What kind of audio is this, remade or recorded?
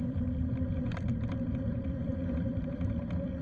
remade